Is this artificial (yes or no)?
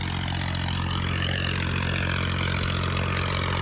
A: no